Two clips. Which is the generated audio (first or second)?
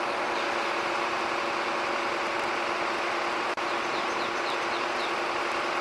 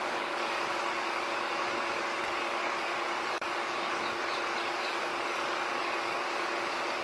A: second